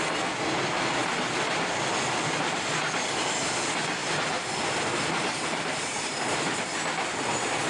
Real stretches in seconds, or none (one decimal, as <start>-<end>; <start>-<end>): 0.0-1.0; 1.7-4.0; 6.6-7.7